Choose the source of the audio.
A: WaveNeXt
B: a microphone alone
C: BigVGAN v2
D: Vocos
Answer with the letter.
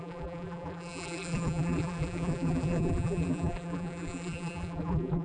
C